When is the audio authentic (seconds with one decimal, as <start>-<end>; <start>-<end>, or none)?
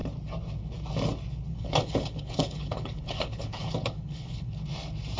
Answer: 0.0-1.5; 4.6-5.2